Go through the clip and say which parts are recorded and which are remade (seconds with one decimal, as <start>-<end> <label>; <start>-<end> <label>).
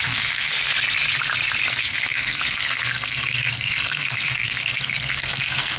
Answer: 0.0-0.5 remade; 0.5-1.7 recorded; 1.7-5.8 remade